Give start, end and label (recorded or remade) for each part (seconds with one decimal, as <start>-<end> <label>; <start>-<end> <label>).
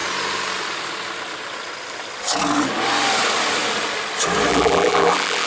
0.0-4.5 recorded; 4.5-5.5 remade